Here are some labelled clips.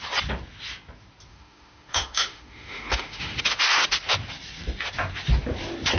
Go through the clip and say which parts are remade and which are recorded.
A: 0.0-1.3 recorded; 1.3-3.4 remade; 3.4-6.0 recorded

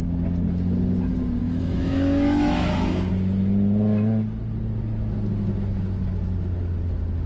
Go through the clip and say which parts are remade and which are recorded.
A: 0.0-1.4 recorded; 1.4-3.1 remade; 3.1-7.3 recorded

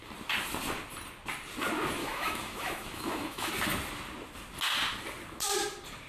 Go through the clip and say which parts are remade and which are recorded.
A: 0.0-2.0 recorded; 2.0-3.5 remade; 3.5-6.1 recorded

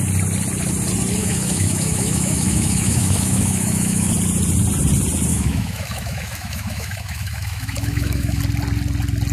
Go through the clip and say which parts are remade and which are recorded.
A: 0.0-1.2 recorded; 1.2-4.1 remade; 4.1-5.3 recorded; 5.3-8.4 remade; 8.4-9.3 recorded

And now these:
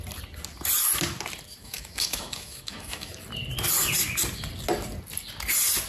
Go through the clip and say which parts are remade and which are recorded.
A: 0.0-1.6 recorded; 1.6-3.1 remade; 3.1-5.9 recorded

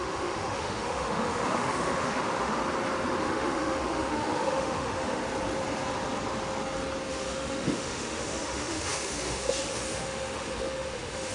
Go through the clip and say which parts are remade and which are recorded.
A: 0.0-2.6 remade; 2.6-3.2 recorded; 3.2-5.2 remade; 5.2-7.1 recorded; 7.1-11.3 remade

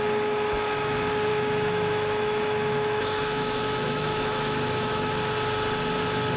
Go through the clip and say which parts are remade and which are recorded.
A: 0.0-1.3 recorded; 1.3-5.1 remade; 5.1-6.4 recorded